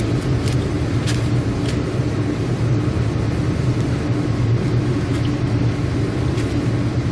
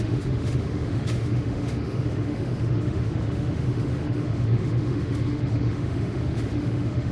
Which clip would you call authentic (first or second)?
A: first